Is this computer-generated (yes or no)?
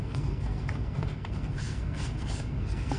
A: yes